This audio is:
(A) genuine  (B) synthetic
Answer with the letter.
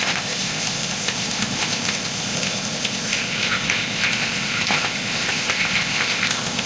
B